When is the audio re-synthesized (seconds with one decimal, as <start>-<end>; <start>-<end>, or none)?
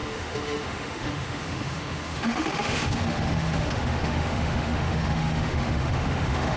0.0-6.6